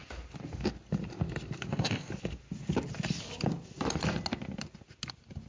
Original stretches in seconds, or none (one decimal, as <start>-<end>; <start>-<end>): 0.0-1.7; 2.1-5.5